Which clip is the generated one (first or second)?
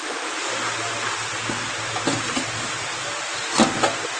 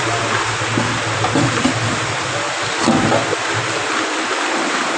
second